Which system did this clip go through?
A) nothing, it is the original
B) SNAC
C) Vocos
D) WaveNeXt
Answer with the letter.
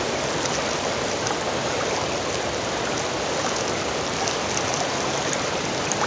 A